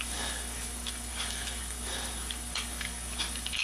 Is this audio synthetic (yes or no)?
yes